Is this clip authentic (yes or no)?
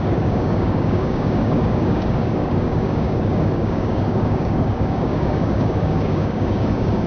no